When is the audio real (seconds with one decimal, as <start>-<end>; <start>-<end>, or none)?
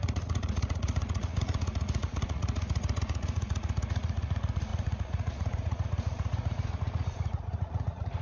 none